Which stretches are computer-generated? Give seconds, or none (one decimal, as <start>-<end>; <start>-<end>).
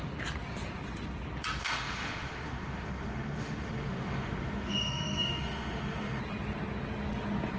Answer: 1.6-6.2